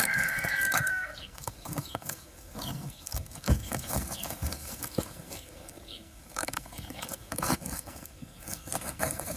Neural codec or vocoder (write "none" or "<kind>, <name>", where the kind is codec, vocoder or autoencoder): codec, SNAC